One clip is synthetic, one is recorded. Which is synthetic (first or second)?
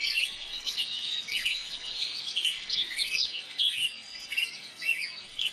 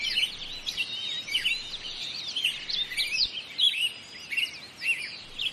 first